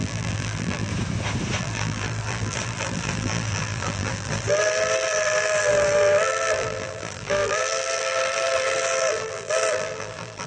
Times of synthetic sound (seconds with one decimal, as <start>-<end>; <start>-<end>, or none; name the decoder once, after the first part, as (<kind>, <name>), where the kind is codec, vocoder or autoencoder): 0.0-0.9 (vocoder, BigVGAN v2); 1.6-10.5